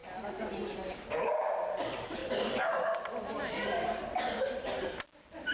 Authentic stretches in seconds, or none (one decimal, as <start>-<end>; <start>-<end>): 0.0-5.5